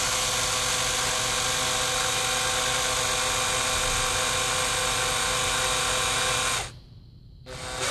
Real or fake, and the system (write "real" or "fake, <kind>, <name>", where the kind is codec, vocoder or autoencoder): real